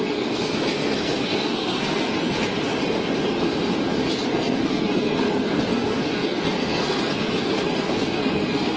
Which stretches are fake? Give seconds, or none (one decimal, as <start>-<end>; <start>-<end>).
0.0-2.5; 4.3-8.8